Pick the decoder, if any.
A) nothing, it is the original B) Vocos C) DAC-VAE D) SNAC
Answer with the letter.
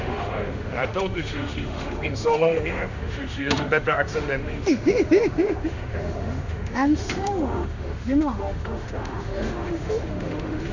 C